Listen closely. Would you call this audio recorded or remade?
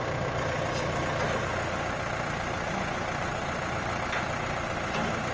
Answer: recorded